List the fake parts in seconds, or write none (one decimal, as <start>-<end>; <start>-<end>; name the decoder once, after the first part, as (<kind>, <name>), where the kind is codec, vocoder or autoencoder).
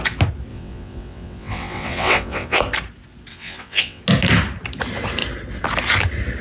0.5-2.6 (vocoder, WaveNeXt); 3.3-4.0